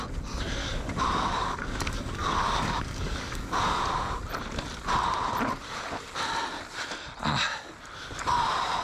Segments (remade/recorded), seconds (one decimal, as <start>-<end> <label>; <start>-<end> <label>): 0.0-0.6 recorded; 0.6-3.8 remade; 3.8-8.8 recorded